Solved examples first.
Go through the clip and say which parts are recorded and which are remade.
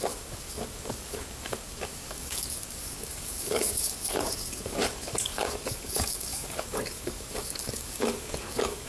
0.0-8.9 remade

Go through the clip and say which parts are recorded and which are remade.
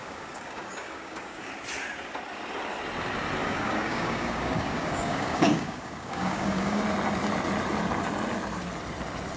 0.0-1.5 remade; 1.5-3.4 recorded; 3.4-6.8 remade; 6.8-9.4 recorded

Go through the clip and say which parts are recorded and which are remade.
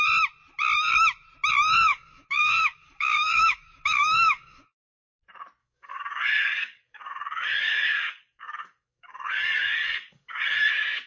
0.0-1.9 recorded; 1.9-4.7 remade; 4.7-5.6 recorded; 5.6-10.7 remade; 10.7-11.1 recorded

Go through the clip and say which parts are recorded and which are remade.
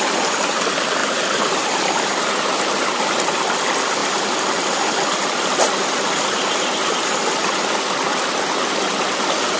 0.0-9.6 recorded